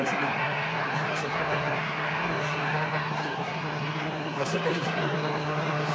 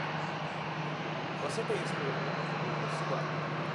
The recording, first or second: second